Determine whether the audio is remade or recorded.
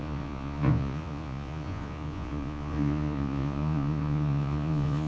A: remade